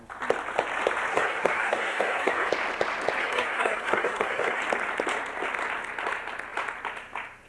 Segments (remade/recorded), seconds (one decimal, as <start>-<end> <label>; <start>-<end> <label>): 0.0-1.1 recorded; 1.1-2.5 remade; 2.5-3.2 recorded; 3.2-4.6 remade; 4.6-7.5 recorded